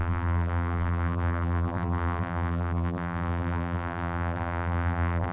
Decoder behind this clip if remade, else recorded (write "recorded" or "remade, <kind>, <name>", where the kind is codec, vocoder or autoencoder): remade, vocoder, BigVGAN v2